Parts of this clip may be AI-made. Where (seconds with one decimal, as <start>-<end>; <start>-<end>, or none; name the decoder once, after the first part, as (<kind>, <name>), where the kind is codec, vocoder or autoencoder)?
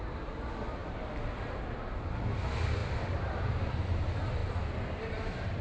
none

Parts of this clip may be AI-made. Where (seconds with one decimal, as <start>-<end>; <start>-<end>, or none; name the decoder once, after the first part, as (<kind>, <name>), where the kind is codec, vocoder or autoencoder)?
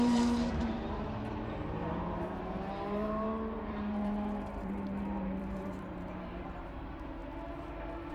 0.0-7.2 (vocoder, BigVGAN v2)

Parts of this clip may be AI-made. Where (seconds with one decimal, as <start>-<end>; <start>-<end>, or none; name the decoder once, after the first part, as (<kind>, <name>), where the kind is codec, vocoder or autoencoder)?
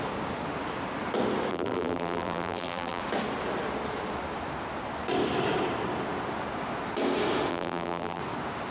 1.5-3.0 (vocoder, BigVGAN v2); 7.5-8.2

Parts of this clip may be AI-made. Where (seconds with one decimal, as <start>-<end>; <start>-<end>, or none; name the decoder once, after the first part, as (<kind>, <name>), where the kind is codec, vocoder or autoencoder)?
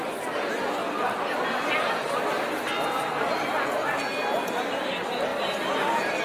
5.3-6.2 (vocoder, BigVGAN v2)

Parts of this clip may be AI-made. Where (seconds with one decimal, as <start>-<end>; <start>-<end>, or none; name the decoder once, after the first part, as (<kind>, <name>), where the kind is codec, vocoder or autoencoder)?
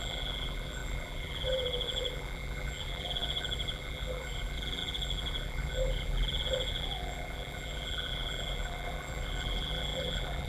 0.0-10.5 (vocoder, BigVGAN v2)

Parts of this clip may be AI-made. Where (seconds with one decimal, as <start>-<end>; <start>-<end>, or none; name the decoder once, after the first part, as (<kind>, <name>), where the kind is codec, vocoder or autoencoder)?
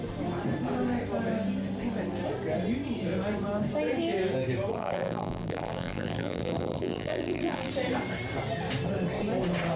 4.7-7.7 (vocoder, BigVGAN v2)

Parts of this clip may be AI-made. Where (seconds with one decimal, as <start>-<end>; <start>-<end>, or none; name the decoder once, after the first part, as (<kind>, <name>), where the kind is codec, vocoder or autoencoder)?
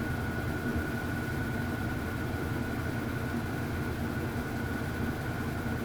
0.7-2.5 (vocoder, BigVGAN v2)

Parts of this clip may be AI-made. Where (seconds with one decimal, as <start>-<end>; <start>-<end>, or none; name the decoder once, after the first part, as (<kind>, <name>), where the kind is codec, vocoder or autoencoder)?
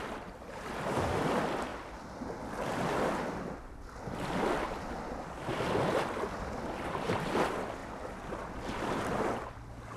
0.0-1.7 (vocoder, BigVGAN v2); 6.8-10.0